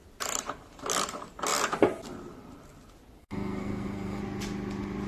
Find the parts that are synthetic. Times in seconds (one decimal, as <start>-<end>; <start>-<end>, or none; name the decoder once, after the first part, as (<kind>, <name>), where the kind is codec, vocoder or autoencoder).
3.2-4.2 (codec, SNAC)